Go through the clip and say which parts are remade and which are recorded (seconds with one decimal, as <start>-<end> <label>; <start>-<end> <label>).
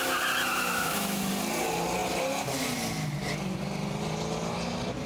0.0-0.5 recorded; 0.5-1.2 remade; 1.2-5.1 recorded